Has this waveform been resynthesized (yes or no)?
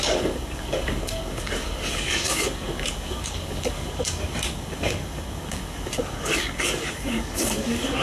yes